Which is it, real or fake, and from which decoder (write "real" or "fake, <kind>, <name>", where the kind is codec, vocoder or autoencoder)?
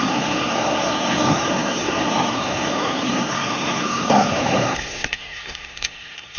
fake, codec, SNAC